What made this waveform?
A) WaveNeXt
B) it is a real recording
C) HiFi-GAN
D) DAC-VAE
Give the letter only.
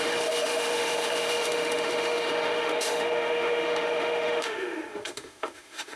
D